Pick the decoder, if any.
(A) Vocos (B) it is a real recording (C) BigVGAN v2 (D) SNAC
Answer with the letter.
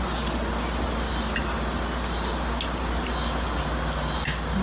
B